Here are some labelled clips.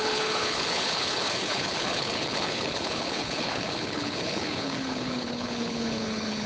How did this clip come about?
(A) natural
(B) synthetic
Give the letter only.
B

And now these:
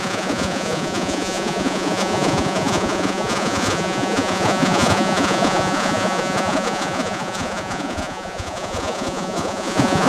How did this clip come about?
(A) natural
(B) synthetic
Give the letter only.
B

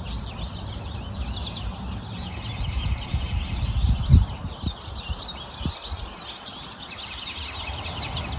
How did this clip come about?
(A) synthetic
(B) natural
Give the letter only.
B